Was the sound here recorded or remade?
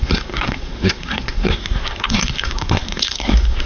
remade